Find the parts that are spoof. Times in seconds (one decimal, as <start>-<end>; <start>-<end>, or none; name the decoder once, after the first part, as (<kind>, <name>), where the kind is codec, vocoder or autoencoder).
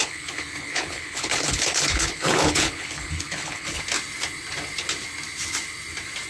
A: 0.0-3.8 (codec, HILCodec)